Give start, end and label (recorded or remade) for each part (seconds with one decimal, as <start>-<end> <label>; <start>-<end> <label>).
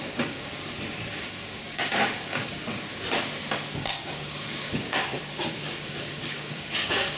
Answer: 0.0-0.5 remade; 0.5-1.2 recorded; 1.2-2.7 remade; 2.7-3.8 recorded; 3.8-7.2 remade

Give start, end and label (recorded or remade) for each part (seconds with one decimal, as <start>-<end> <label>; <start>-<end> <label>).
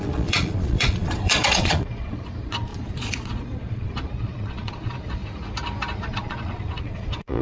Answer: 0.0-5.2 remade; 5.2-6.0 recorded; 6.0-7.4 remade